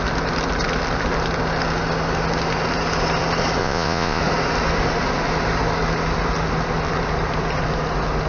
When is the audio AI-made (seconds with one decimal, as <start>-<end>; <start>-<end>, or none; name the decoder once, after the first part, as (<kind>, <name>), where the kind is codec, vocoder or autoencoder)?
3.6-4.2 (vocoder, Vocos)